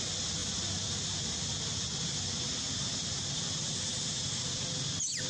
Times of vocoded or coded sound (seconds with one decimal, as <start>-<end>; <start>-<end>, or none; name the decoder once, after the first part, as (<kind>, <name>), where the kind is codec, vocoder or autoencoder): none